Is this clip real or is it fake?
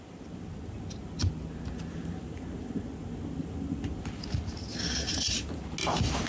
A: real